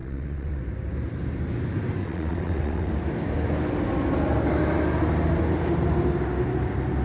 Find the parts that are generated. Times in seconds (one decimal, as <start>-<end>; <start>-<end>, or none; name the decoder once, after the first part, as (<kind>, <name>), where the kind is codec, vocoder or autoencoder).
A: 0.0-0.6 (vocoder, WaveNeXt); 2.0-2.9